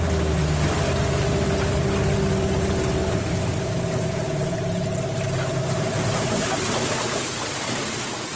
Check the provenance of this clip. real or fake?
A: real